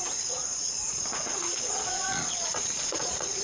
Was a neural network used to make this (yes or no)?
yes